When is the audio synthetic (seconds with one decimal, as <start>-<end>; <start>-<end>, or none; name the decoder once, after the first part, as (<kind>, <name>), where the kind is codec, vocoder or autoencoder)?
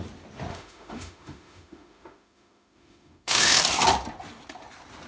0.5-3.6 (autoencoder, DAC-VAE)